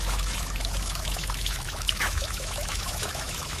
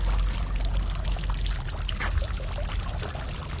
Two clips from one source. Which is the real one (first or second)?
second